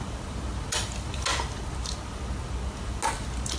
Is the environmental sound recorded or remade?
recorded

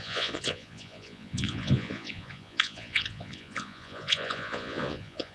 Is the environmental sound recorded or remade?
remade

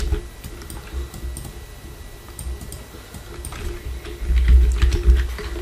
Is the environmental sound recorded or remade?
recorded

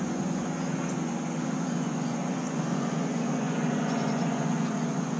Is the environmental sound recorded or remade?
remade